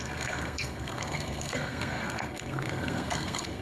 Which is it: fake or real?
fake